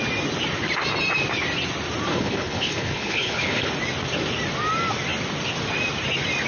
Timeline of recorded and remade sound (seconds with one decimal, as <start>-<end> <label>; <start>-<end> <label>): 0.0-2.1 recorded; 2.1-3.7 remade; 3.7-6.5 recorded